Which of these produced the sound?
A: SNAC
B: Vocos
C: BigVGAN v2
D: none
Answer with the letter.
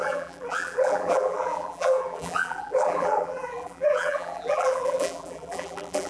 C